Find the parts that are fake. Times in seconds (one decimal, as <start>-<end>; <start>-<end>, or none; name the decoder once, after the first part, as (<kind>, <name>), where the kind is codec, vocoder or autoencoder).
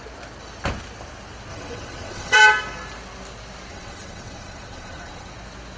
1.5-2.4 (vocoder, WaveNeXt); 3.7-5.3